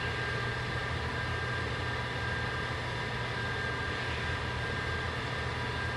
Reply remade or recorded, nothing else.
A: recorded